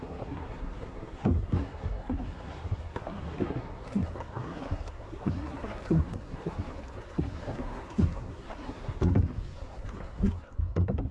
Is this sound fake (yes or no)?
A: yes